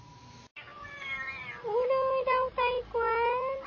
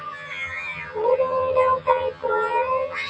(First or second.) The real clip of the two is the first